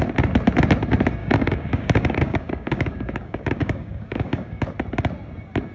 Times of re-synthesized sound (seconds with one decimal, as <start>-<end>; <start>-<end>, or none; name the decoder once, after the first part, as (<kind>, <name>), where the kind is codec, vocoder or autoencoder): 1.2-4.6 (codec, DAC)